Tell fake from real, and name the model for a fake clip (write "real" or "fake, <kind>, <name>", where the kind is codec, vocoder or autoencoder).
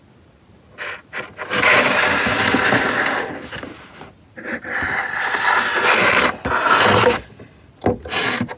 real